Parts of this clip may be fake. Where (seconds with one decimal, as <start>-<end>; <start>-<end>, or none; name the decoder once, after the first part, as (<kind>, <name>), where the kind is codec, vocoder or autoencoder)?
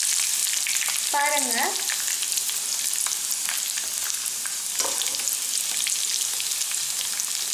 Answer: none